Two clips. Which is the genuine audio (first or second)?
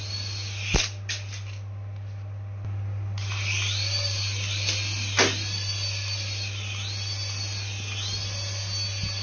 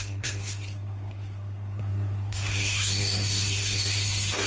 first